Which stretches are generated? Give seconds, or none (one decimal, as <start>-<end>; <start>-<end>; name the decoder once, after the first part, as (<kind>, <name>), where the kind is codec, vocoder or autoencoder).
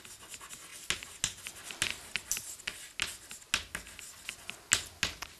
none